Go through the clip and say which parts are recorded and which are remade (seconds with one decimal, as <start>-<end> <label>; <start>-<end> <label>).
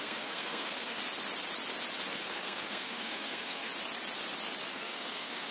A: 0.0-1.0 remade; 1.0-2.1 recorded; 2.1-3.7 remade; 3.7-4.7 recorded; 4.7-5.5 remade